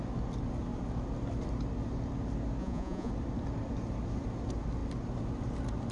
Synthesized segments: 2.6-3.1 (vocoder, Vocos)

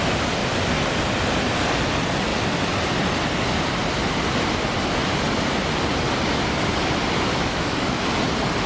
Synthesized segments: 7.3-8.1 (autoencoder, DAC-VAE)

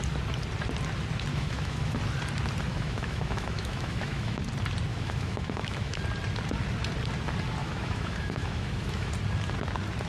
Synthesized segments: 1.3-2.0 (autoencoder, DAC-VAE); 2.7-4.4; 4.9-6.0; 7.6-9.1

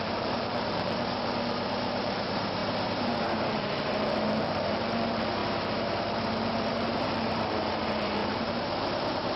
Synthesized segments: 0.0-2.6 (vocoder, BigVGAN v2); 3.5-9.4

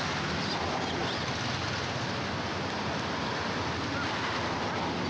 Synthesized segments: none

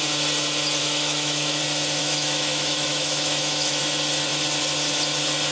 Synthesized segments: 0.8-1.6 (autoencoder, DAC-VAE); 2.0-3.8